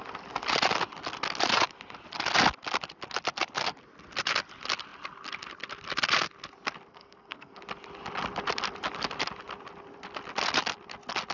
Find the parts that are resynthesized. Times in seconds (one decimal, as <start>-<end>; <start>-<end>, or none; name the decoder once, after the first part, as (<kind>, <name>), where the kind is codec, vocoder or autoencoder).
6.9-7.6 (codec, SNAC)